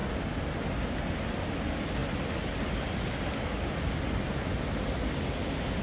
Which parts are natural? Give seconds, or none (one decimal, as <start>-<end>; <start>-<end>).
0.0-5.8